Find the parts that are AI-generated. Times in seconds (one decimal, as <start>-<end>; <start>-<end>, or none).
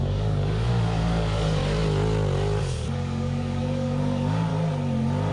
0.0-1.6; 2.6-4.5